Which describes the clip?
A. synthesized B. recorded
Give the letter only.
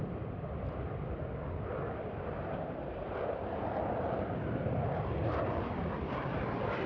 A